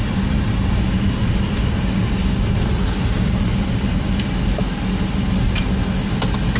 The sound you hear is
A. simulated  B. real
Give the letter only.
B